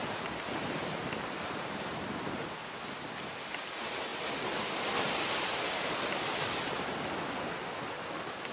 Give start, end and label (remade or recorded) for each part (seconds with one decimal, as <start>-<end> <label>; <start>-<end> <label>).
0.0-8.5 recorded